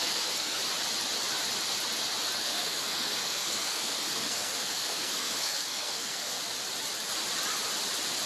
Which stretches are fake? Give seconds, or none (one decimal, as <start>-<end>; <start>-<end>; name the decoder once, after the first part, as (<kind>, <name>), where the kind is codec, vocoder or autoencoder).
0.0-0.6 (codec, SNAC); 2.4-6.4